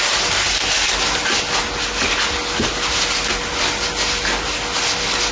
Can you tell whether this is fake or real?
real